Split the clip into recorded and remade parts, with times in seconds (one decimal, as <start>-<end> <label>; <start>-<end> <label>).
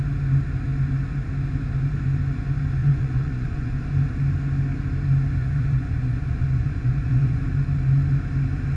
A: 0.0-2.8 recorded; 2.8-3.8 remade; 3.8-5.4 recorded; 5.4-7.5 remade; 7.5-8.8 recorded